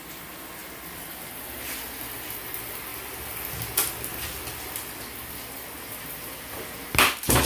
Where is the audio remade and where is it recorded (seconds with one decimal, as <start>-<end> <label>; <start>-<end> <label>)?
0.0-7.5 recorded